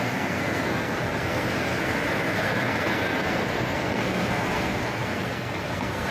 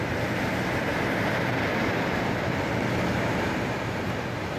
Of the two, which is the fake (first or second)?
first